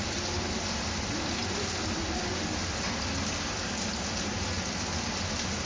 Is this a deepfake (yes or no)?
no